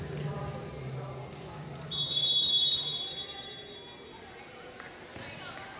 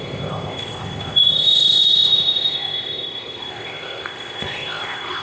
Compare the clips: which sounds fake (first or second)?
second